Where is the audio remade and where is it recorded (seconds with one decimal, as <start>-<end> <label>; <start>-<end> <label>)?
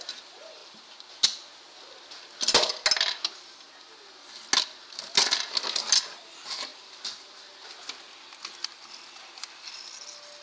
0.0-10.4 recorded